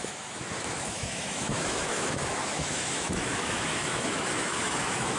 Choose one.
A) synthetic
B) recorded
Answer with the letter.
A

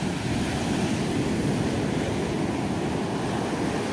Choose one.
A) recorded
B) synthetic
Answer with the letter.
A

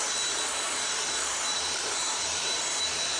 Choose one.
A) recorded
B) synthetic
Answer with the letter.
B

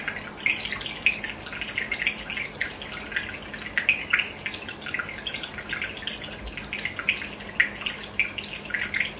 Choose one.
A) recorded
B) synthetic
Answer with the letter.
A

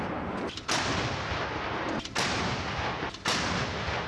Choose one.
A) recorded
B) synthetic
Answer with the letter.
A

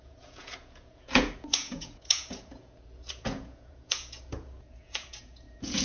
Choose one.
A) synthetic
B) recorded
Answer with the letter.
A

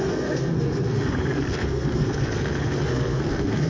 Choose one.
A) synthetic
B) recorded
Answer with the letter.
A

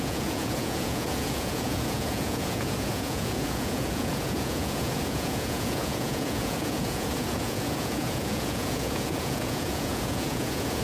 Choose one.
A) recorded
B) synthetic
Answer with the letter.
B